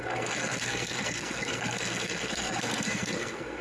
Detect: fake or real fake